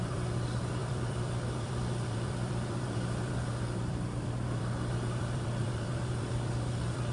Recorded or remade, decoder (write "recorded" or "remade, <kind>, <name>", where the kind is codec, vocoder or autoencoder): remade, vocoder, BigVGAN v2